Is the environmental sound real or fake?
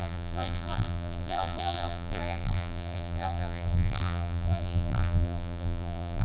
fake